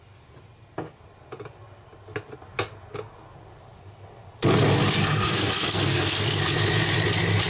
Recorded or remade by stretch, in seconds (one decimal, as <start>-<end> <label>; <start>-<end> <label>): 0.0-5.0 recorded; 5.0-6.4 remade; 6.4-7.5 recorded